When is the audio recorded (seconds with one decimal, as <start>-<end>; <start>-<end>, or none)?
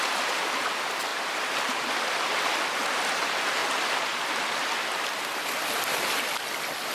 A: 0.0-1.1; 1.9-6.9